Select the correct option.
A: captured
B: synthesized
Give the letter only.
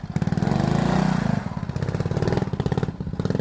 A